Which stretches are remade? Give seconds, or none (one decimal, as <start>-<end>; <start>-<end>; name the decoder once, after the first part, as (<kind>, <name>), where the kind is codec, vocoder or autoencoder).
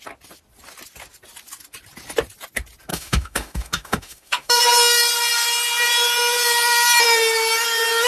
2.9-4.6 (autoencoder, DAC-VAE)